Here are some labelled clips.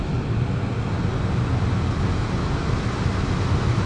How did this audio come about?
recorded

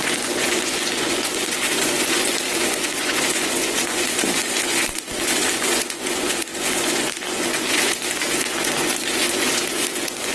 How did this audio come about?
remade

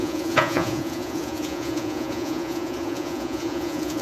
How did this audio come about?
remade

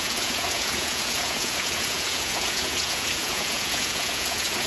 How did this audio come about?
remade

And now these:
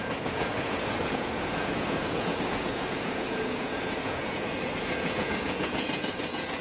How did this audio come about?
remade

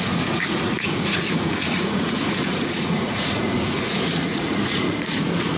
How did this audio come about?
remade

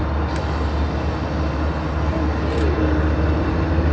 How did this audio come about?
recorded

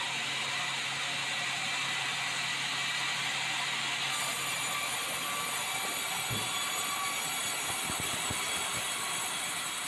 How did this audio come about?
recorded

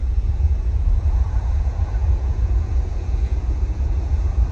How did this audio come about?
remade